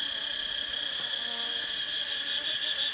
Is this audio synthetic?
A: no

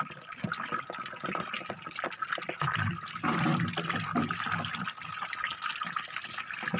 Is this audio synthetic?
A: no